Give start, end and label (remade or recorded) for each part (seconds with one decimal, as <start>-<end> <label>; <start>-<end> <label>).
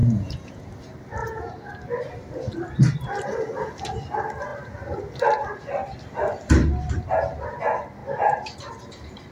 0.0-0.7 remade; 0.7-1.2 recorded; 1.2-1.7 remade; 1.7-9.3 recorded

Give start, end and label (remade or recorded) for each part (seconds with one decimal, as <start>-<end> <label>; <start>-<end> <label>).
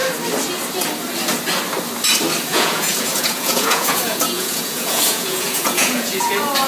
0.0-2.5 recorded; 2.5-6.3 remade; 6.3-6.7 recorded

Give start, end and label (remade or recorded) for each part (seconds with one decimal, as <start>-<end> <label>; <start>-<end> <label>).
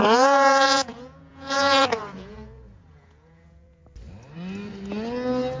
0.0-3.8 remade; 3.8-5.6 recorded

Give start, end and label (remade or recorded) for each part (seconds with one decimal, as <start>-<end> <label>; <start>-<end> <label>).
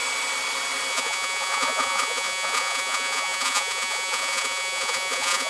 0.0-0.9 recorded; 0.9-5.5 remade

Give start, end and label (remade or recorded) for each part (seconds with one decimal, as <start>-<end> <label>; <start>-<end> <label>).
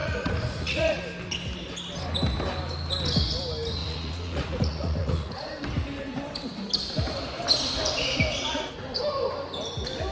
0.0-1.0 remade; 1.0-3.8 recorded; 3.8-5.5 remade; 5.5-10.1 recorded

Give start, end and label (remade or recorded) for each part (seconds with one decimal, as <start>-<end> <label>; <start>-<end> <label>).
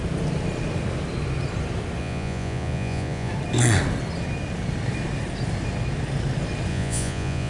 0.0-2.0 recorded; 2.0-3.3 remade; 3.3-6.7 recorded; 6.7-7.5 remade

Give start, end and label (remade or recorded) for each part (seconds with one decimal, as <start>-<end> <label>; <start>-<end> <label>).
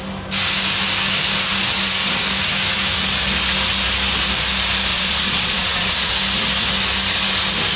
0.0-4.9 recorded; 4.9-6.1 remade; 6.1-7.8 recorded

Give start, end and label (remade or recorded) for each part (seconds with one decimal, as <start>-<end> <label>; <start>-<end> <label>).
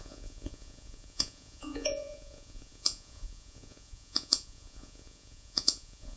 0.0-6.2 remade